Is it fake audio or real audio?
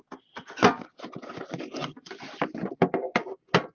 real